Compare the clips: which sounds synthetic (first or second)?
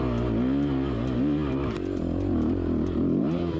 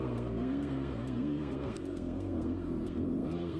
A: second